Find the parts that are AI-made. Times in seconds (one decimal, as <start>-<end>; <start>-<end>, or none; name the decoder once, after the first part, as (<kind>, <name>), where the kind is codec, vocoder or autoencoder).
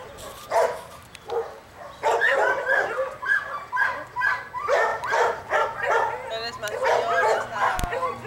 4.9-5.9 (vocoder, BigVGAN v2)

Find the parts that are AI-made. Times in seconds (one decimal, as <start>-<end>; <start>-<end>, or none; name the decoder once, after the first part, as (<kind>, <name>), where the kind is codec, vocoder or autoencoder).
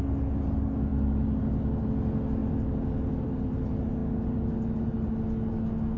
2.4-3.3 (vocoder, BigVGAN v2)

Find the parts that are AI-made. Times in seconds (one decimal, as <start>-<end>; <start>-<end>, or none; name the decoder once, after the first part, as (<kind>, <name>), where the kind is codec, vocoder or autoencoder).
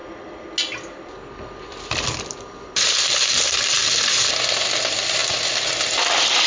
2.5-3.8 (vocoder, BigVGAN v2); 4.3-5.2; 5.7-6.5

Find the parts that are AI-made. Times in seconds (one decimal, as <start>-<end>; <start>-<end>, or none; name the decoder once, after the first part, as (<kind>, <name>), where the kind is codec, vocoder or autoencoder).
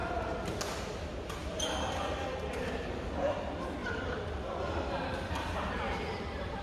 0.0-0.6 (vocoder, BigVGAN v2); 1.4-2.2; 3.8-5.7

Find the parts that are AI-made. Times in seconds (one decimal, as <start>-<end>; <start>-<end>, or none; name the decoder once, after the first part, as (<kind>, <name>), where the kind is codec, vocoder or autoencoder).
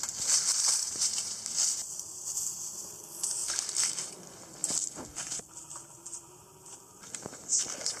1.8-3.0 (vocoder, BigVGAN v2); 3.4-4.1; 4.6-6.4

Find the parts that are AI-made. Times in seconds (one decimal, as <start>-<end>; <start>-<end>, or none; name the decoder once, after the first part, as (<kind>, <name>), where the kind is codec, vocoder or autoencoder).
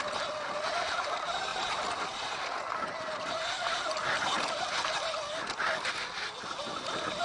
none